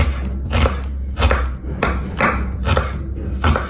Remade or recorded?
recorded